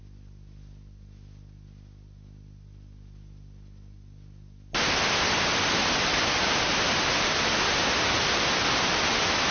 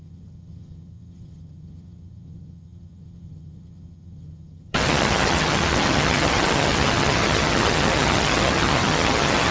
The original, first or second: first